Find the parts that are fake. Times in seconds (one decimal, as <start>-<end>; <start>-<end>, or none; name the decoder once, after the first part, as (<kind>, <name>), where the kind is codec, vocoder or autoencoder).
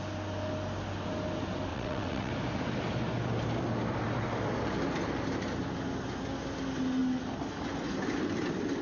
1.7-2.3 (vocoder, WaveNeXt)